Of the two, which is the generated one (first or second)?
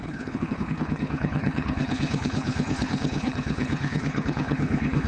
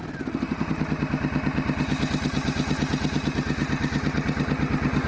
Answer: first